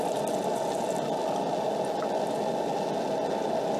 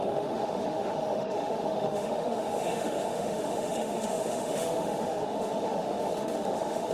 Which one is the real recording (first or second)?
first